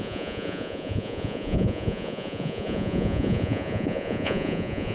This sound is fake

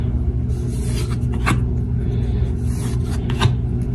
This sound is real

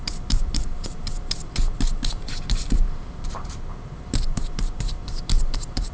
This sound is fake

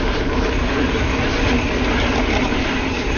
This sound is real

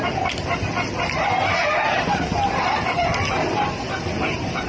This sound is real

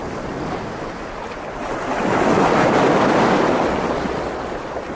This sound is real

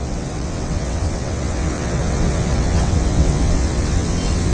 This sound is fake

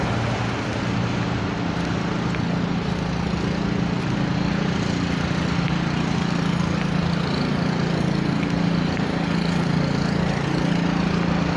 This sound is real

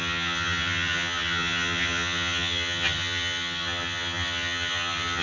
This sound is fake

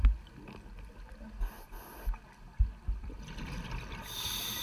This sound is real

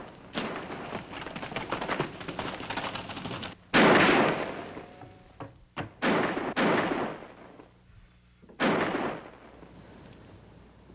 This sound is real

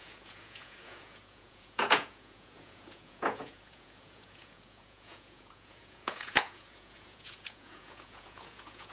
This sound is fake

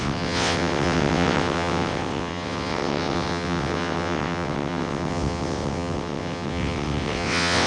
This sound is fake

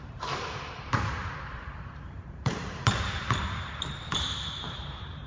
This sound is fake